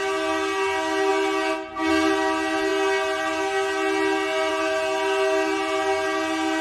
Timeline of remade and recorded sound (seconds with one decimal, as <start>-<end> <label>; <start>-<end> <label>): 0.0-6.6 recorded